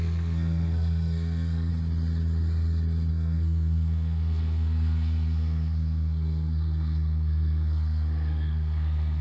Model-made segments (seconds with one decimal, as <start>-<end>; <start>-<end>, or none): 0.0-1.7; 3.1-9.2